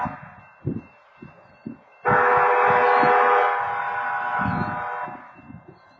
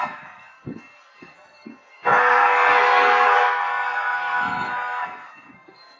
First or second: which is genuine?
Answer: first